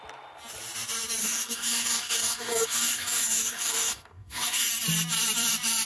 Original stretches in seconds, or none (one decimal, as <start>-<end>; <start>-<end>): 0.0-1.2; 4.7-5.8

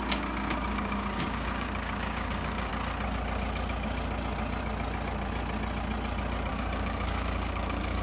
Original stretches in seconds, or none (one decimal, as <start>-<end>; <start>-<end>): 2.7-6.5

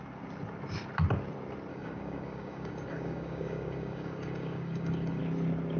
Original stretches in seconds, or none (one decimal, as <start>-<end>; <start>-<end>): 0.0-1.7; 5.2-5.8